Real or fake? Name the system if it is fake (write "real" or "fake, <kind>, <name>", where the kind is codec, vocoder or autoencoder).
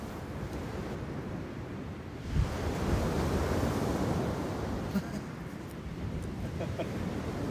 fake, vocoder, BigVGAN v2